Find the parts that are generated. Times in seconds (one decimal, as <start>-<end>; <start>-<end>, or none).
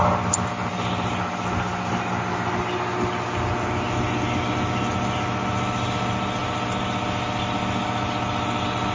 none